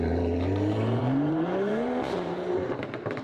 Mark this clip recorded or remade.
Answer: remade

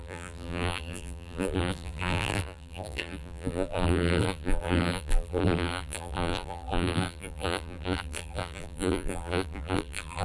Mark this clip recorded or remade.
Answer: remade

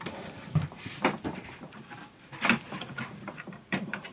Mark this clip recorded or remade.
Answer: remade